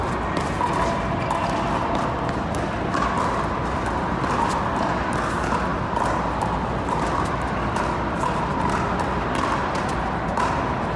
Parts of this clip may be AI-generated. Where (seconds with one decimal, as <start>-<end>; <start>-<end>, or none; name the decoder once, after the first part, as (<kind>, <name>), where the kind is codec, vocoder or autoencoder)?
none